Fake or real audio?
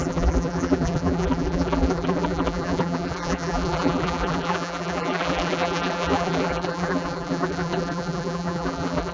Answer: fake